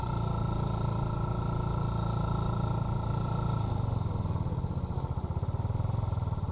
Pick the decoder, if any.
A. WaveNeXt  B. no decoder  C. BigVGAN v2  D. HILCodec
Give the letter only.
B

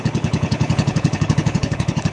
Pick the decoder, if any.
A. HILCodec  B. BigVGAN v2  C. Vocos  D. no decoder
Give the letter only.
A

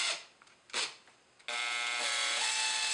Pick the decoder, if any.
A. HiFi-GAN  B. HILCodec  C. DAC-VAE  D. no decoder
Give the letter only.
D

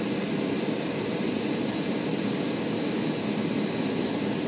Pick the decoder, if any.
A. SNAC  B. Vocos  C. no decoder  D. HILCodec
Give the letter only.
C